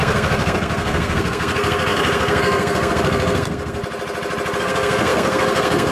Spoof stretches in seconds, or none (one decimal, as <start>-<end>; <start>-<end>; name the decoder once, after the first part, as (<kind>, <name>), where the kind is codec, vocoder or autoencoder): 0.0-3.8 (codec, SNAC); 4.6-5.9